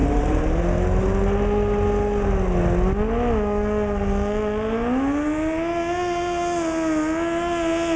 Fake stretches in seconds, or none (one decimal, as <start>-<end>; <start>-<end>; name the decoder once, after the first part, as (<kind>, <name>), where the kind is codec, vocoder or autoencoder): 0.0-0.6 (vocoder, BigVGAN v2)